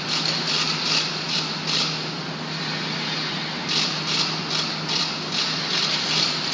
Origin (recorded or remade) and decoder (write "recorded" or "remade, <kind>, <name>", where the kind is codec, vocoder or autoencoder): recorded